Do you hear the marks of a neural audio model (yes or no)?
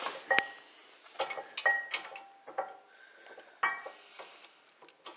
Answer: no